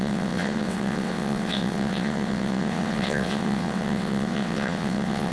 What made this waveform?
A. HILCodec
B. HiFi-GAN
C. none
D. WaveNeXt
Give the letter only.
D